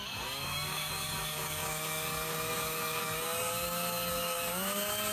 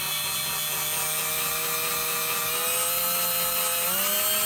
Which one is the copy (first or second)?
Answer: first